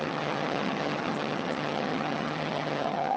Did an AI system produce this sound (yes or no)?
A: yes